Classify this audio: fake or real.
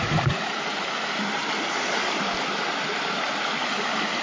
fake